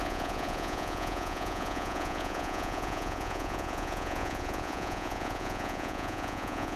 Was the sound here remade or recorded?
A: remade